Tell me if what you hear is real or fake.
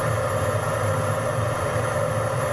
real